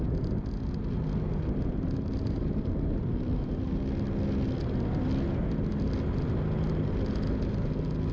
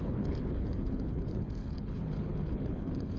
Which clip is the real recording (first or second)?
first